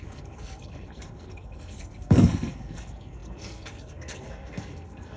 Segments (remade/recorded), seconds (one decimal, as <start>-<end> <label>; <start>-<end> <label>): 0.0-5.2 remade